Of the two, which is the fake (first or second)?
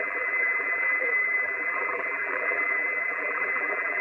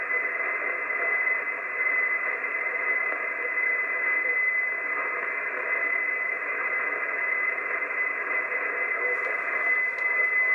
first